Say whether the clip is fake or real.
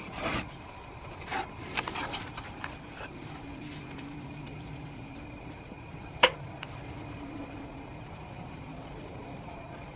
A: fake